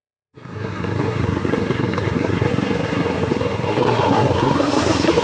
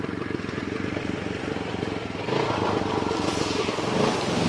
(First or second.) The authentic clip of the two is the second